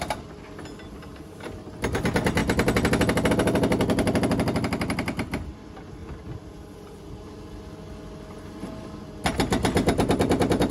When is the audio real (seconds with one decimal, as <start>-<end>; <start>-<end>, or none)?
0.0-10.7